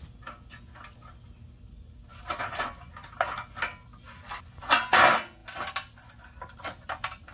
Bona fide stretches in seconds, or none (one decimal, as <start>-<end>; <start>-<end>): 0.0-7.3